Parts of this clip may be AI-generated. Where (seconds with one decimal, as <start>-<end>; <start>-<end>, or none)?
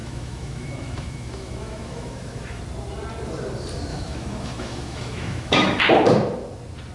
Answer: 0.0-2.6; 3.9-5.8